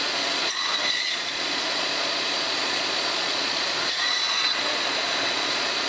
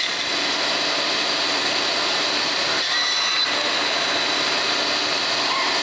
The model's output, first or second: first